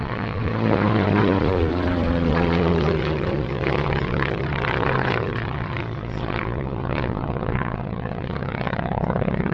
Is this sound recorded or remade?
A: remade